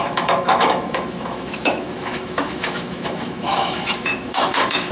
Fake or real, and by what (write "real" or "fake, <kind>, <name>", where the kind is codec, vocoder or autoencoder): fake, autoencoder, DAC-VAE